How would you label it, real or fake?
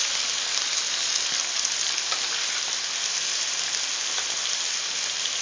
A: real